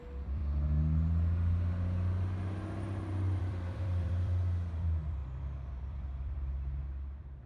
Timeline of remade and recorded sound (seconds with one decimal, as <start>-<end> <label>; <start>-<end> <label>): 0.0-0.4 remade; 0.4-3.4 recorded; 3.4-5.2 remade; 5.2-5.8 recorded; 5.8-7.5 remade